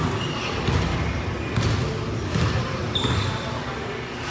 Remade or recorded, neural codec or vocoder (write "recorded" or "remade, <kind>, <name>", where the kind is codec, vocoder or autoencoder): recorded